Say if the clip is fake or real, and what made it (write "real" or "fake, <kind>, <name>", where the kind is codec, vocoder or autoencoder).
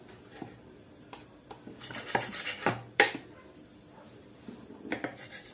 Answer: fake, vocoder, BigVGAN v2